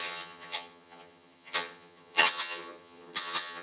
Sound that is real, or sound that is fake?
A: fake